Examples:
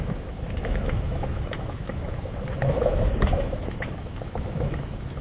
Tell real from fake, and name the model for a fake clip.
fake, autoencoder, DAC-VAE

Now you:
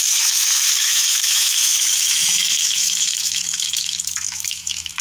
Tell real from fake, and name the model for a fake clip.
fake, autoencoder, DAC-VAE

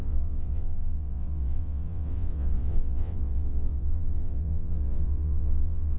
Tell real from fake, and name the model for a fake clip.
fake, vocoder, WaveNeXt